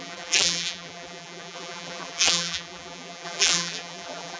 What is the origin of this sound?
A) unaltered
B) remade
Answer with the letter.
B